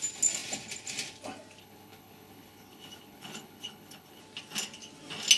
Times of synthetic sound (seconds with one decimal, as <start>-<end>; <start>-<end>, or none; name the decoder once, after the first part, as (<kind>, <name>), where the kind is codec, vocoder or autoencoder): 1.6-4.2 (codec, HILCodec)